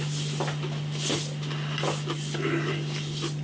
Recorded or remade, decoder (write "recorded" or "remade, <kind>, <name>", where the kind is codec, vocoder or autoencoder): recorded